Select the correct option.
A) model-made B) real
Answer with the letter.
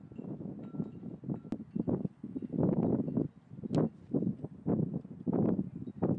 B